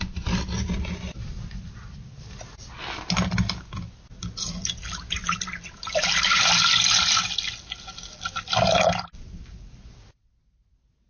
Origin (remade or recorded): recorded